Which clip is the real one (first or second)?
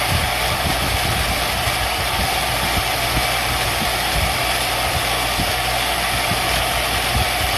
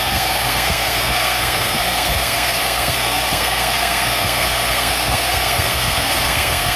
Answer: first